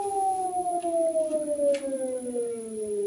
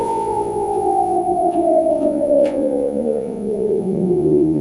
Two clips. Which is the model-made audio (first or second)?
second